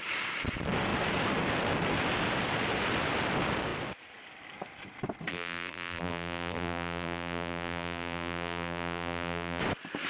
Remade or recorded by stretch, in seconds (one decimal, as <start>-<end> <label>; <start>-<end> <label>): 0.0-5.3 recorded; 5.3-9.6 remade; 9.6-10.1 recorded